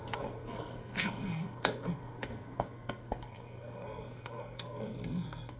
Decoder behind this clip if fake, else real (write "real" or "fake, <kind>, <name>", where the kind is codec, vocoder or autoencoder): fake, codec, SNAC